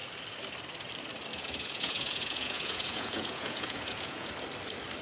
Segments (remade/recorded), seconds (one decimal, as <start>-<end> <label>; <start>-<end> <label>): 0.0-1.3 recorded; 1.3-4.3 remade; 4.3-5.0 recorded